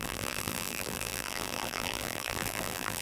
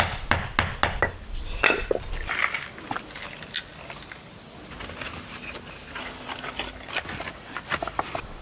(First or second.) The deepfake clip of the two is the first